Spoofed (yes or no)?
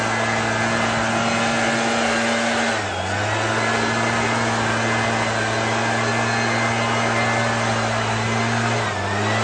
no